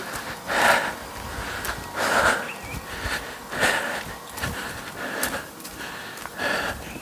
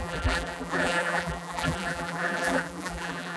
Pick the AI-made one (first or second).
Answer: second